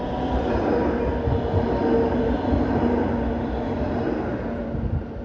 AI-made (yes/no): no